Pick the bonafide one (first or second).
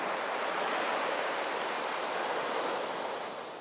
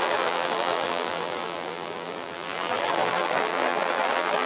first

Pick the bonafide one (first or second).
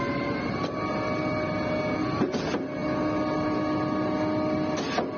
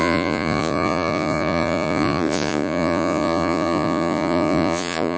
first